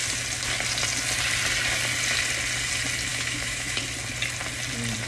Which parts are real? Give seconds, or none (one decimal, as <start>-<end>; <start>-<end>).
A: 0.0-3.1; 3.8-5.1